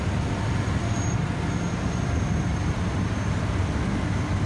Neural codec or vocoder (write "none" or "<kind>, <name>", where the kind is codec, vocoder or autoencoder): none